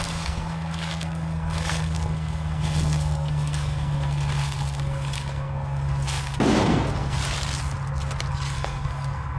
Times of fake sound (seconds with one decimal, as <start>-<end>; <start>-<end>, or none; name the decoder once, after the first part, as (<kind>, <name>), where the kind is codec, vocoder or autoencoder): 0.0-7.2 (codec, SNAC); 8.3-9.4